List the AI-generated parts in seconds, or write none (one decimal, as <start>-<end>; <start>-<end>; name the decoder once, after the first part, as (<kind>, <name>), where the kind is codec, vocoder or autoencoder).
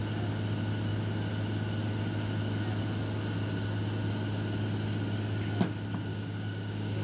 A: 6.1-7.0 (codec, DAC)